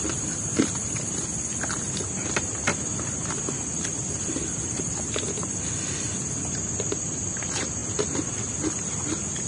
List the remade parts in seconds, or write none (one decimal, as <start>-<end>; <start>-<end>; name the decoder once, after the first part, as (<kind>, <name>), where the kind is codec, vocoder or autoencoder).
none